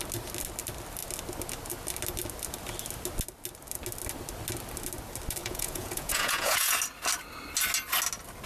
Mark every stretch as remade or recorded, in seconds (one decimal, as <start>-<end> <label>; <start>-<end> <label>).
0.0-5.4 recorded; 5.4-6.7 remade; 6.7-8.5 recorded